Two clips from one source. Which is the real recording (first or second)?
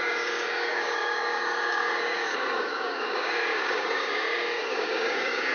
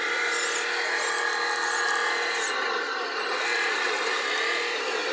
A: second